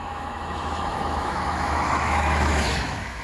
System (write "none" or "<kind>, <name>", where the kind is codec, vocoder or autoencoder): autoencoder, DAC-VAE